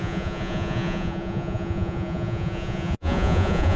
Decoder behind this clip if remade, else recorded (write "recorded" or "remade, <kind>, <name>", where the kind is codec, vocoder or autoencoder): remade, vocoder, Vocos